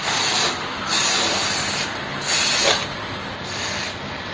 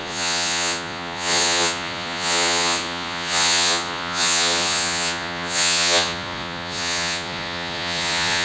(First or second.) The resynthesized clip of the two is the second